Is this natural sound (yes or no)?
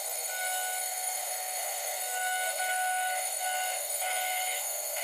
no